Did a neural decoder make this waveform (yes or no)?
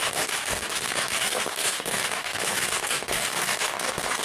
yes